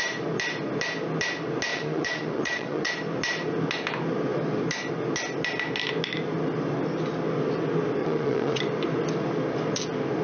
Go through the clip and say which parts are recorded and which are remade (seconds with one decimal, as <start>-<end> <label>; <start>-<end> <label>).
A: 0.0-1.7 recorded; 1.7-2.9 remade; 2.9-8.0 recorded; 8.0-8.6 remade; 8.6-10.2 recorded